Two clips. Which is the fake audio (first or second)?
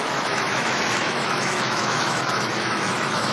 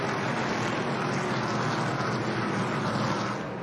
first